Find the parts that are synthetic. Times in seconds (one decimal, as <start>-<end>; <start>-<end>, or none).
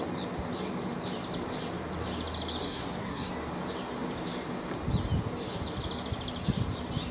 2.6-3.3